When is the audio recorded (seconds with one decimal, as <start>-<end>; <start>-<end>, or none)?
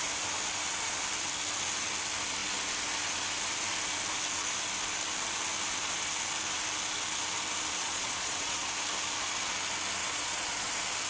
0.0-7.8; 8.7-10.0; 10.7-11.1